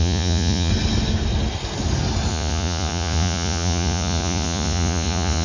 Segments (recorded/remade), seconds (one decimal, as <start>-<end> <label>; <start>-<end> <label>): 0.0-0.7 remade; 0.7-2.3 recorded; 2.3-5.4 remade